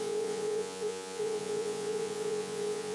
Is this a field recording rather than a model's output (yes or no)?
no